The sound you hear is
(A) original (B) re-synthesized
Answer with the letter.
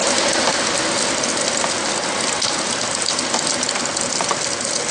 A